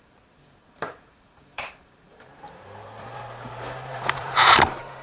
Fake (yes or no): yes